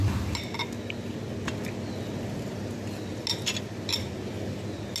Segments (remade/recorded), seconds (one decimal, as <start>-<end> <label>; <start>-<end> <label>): 0.0-5.0 recorded